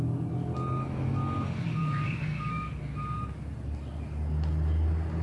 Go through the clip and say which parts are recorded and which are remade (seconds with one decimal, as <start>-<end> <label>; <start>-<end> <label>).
0.0-1.8 recorded; 1.8-2.8 remade; 2.8-5.2 recorded